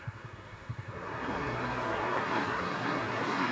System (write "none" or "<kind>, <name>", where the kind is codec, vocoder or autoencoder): codec, SNAC